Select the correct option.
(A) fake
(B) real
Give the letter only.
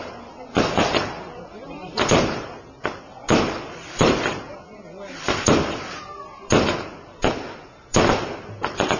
B